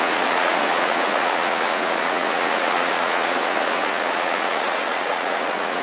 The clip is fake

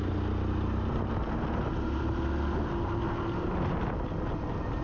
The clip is real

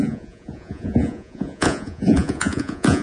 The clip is fake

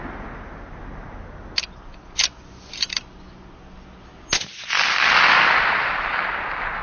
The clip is real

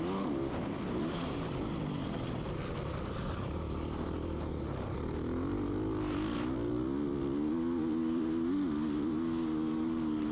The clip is real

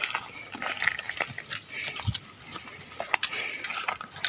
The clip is real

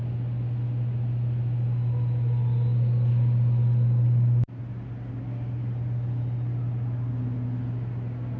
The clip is real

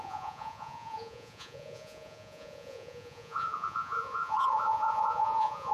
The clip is fake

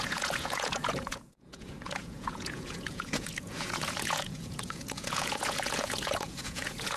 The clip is fake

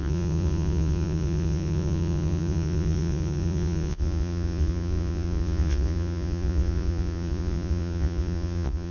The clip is fake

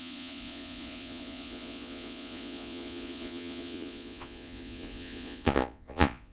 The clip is fake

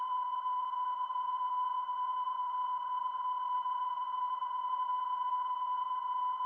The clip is fake